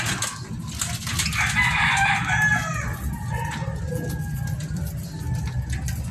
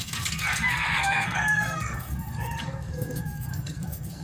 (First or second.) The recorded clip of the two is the first